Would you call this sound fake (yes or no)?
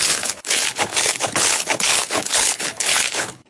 yes